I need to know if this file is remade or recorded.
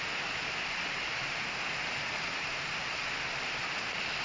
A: recorded